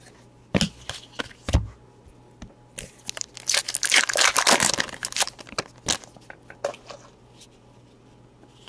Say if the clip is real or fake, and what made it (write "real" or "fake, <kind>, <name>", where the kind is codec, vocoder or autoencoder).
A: real